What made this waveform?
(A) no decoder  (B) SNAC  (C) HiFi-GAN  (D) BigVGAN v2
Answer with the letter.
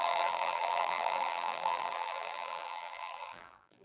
D